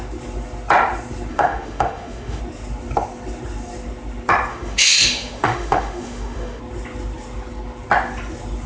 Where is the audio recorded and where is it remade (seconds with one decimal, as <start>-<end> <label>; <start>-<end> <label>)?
0.0-1.3 recorded; 1.3-2.4 remade; 2.4-4.5 recorded; 4.5-6.6 remade; 6.6-8.7 recorded